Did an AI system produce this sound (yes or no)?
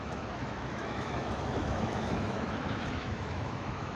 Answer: yes